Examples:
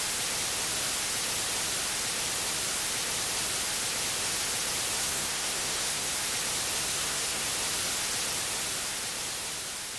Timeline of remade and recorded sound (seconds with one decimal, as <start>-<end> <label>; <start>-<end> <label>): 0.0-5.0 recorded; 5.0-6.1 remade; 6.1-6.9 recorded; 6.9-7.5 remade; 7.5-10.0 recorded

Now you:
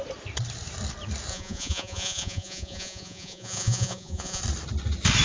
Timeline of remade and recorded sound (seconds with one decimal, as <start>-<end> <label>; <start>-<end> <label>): 0.0-1.3 recorded; 1.3-4.4 remade; 4.4-5.2 recorded

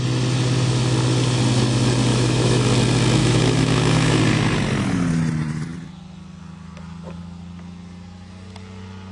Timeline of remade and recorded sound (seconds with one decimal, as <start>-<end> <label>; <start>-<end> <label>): 0.0-2.1 recorded; 2.1-2.6 remade; 2.6-3.2 recorded; 3.2-4.2 remade; 4.2-9.1 recorded

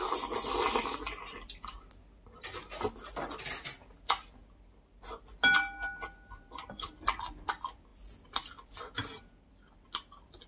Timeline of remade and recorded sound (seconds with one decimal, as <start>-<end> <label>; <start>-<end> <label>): 0.0-10.5 recorded

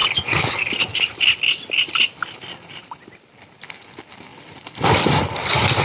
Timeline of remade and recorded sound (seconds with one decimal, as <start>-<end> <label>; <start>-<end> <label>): 0.0-3.5 remade; 3.5-4.3 recorded; 4.3-5.1 remade; 5.1-5.8 recorded